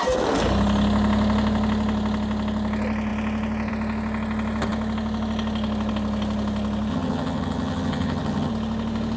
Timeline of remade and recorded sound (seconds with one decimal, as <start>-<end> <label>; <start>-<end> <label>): 0.0-6.9 recorded; 6.9-8.5 remade; 8.5-9.2 recorded